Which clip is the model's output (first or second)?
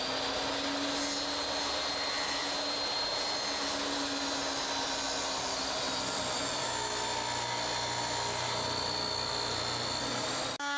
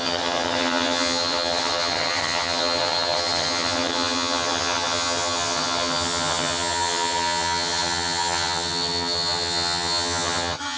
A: second